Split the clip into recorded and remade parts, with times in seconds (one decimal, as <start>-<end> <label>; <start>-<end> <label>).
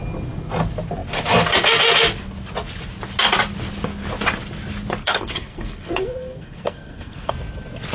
0.0-5.0 recorded; 5.0-7.3 remade; 7.3-7.9 recorded